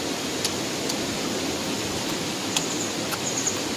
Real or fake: real